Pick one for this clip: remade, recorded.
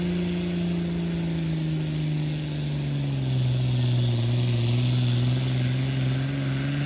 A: recorded